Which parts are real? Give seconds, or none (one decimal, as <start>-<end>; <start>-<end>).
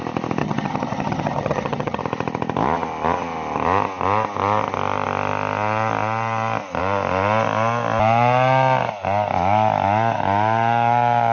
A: 0.0-0.4; 2.0-11.3